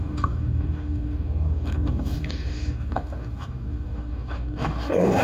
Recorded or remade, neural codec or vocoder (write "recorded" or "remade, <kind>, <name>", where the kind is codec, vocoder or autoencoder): remade, codec, DAC